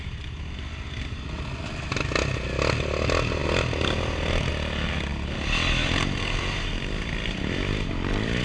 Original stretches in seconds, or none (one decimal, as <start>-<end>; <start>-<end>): 0.0-8.4